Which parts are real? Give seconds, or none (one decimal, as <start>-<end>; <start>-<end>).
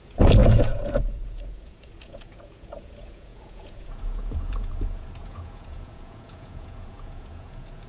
none